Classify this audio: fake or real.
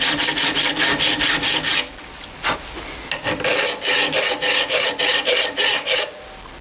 real